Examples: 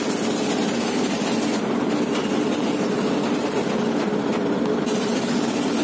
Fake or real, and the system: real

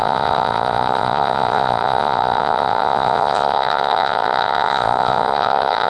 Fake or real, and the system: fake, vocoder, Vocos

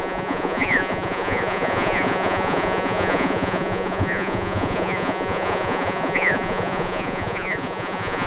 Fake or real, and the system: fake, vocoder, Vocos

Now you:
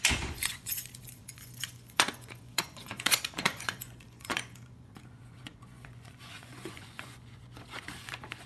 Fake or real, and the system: fake, vocoder, Vocos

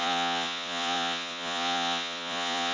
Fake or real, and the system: fake, vocoder, Vocos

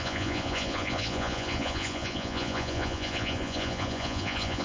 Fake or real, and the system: fake, vocoder, Vocos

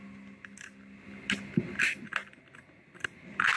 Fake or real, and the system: real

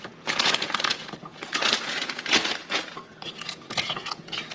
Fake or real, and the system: fake, vocoder, Vocos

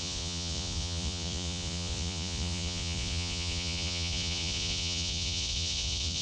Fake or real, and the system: fake, vocoder, Vocos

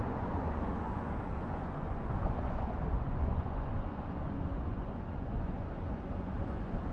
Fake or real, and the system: fake, vocoder, Vocos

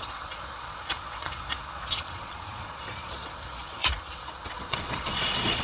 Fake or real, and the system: fake, vocoder, Vocos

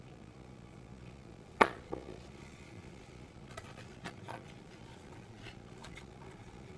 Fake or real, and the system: fake, vocoder, Vocos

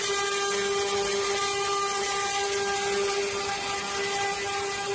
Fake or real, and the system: real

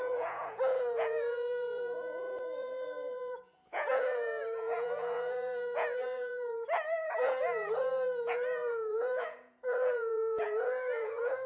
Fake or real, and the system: fake, vocoder, Vocos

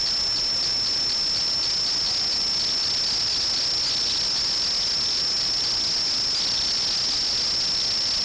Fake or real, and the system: real